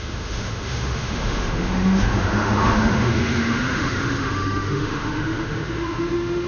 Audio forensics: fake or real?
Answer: fake